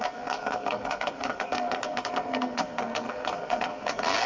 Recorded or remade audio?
remade